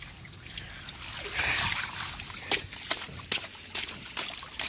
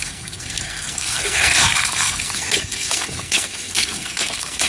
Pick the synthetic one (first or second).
second